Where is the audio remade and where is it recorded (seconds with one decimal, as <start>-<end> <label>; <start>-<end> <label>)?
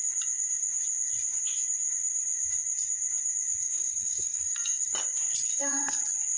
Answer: 0.0-3.6 recorded; 3.6-4.9 remade; 4.9-5.5 recorded; 5.5-6.0 remade; 6.0-6.4 recorded